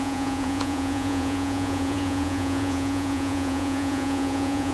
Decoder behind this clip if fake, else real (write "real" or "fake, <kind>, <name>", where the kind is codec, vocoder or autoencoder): fake, vocoder, Vocos